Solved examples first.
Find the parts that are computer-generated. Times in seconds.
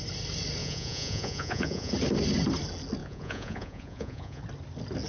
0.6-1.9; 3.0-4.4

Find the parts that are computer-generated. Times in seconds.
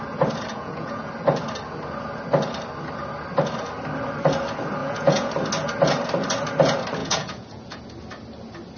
0.5-1.1; 4.8-5.3; 7.0-7.8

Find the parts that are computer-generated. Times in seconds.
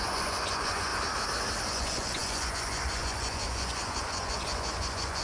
0.0-0.9; 1.7-5.2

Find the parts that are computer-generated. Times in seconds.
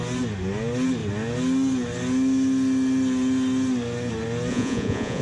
4.5-5.2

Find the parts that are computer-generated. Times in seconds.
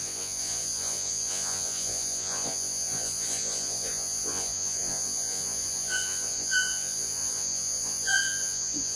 0.0-9.0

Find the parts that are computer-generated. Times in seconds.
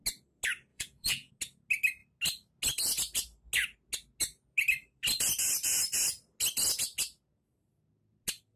0.7-1.3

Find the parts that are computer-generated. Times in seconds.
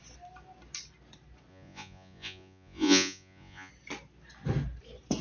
1.5-3.7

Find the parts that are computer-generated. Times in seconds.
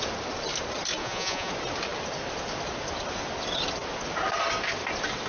1.0-1.5